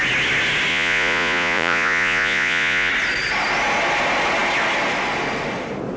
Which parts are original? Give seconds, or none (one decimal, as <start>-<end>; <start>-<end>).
0.0-0.7; 2.9-6.0